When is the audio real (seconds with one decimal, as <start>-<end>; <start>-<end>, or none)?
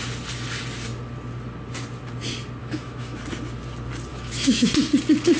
0.0-2.6; 3.2-4.1; 4.7-5.4